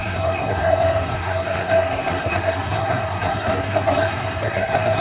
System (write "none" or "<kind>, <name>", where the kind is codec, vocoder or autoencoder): codec, SNAC